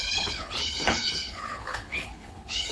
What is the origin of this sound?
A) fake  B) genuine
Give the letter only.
A